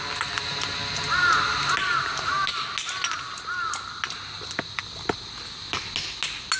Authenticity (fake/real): real